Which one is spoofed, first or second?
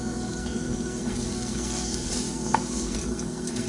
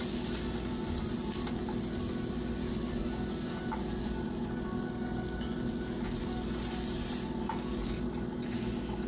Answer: first